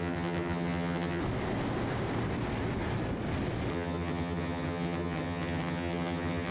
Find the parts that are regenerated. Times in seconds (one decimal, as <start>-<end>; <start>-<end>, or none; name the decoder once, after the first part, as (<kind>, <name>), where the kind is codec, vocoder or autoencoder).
0.0-1.2 (vocoder, HiFi-GAN); 3.7-6.5